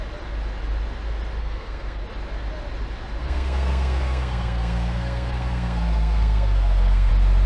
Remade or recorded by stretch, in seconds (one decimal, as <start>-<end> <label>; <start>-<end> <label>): 0.0-1.4 recorded; 1.4-2.0 remade; 2.0-3.2 recorded; 3.2-7.1 remade; 7.1-7.5 recorded